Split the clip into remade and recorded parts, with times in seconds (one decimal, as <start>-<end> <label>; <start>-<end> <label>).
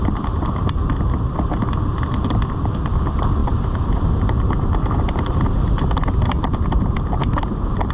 0.0-3.4 recorded; 3.4-7.9 remade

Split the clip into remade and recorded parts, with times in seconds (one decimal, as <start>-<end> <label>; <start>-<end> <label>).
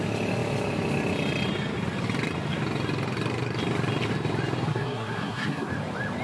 0.0-4.7 recorded; 4.7-5.7 remade; 5.7-6.2 recorded